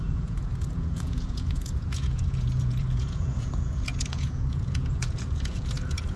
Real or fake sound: fake